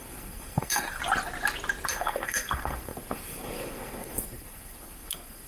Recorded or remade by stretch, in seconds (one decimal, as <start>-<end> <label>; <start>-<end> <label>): 0.0-1.0 remade; 1.0-1.9 recorded; 1.9-5.5 remade